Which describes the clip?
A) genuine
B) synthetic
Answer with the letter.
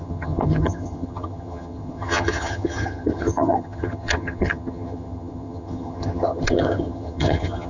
B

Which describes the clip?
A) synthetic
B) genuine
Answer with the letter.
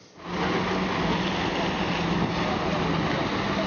B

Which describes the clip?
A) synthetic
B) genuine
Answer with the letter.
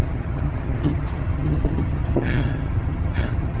A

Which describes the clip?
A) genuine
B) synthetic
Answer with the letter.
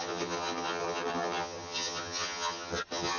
B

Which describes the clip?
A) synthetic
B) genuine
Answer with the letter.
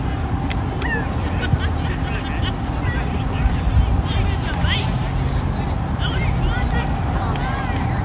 B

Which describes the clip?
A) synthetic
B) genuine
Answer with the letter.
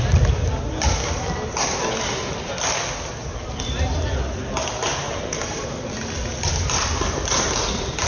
B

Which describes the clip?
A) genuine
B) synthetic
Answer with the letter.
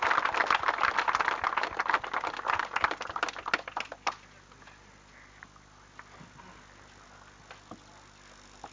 A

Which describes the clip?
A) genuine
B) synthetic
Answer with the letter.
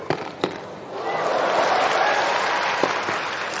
A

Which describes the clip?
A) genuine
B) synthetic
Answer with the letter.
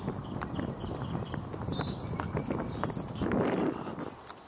A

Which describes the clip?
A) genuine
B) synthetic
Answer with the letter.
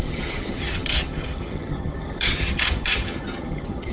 B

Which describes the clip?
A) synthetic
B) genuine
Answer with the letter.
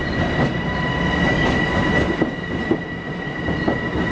B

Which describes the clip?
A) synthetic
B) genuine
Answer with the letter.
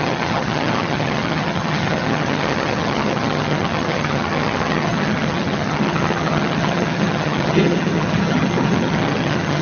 A